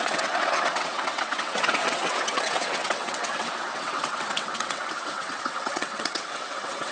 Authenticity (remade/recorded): remade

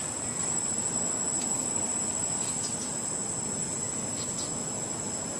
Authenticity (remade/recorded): recorded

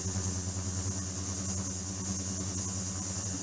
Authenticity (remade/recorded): recorded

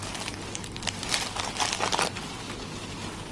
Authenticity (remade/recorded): recorded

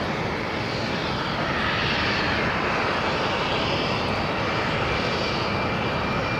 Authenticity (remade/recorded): recorded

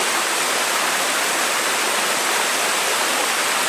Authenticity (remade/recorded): recorded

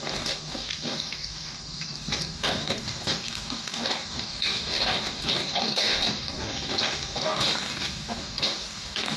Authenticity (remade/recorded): remade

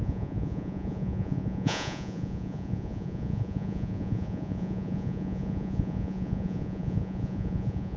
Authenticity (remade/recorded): remade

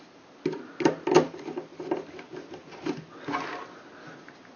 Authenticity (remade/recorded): recorded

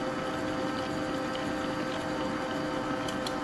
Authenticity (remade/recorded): recorded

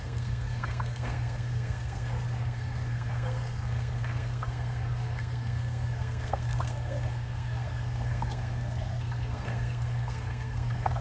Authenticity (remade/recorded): remade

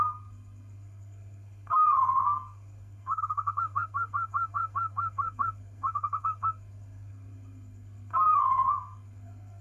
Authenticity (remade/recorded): remade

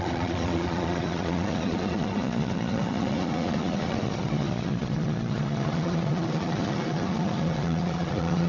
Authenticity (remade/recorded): remade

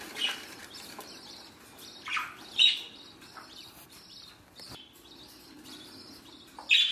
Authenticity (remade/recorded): recorded